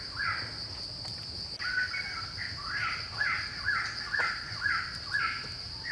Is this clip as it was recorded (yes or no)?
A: yes